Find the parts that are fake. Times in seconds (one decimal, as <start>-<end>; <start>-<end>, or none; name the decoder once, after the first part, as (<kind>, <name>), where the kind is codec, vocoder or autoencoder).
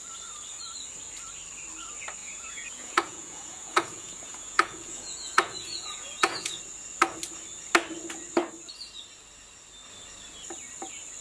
2.2-6.6 (vocoder, Vocos)